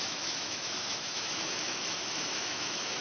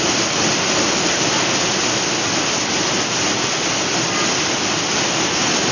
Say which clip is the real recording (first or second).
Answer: second